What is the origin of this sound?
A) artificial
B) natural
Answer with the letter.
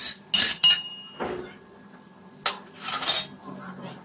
B